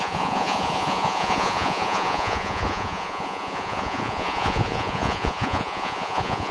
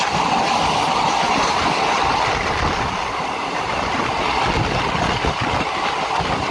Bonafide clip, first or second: second